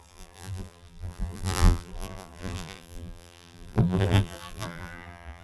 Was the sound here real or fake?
fake